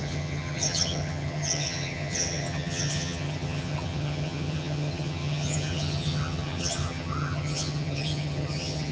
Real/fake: fake